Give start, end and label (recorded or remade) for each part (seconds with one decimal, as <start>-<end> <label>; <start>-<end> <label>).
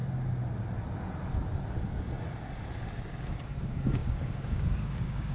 0.0-3.2 recorded; 3.2-5.3 remade